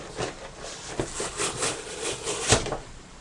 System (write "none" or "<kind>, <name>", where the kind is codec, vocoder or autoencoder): none